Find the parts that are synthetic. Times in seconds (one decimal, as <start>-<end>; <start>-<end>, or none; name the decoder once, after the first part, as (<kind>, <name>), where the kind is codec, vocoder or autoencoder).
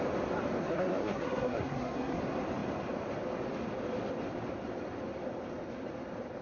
0.6-2.2 (codec, SNAC)